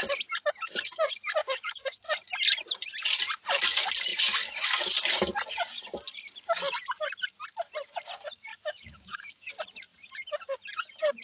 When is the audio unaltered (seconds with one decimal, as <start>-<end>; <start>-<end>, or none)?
0.0-1.4; 2.0-8.5; 9.5-11.2